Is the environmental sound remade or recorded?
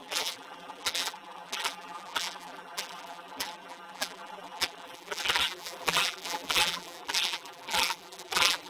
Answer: remade